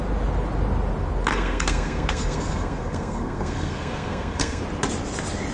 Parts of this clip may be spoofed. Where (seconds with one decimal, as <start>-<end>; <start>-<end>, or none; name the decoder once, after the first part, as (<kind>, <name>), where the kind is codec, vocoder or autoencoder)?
1.3-4.6 (codec, SNAC)